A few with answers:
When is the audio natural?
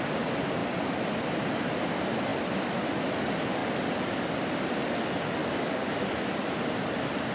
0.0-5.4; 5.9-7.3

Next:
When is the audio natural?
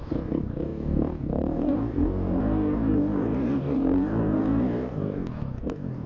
none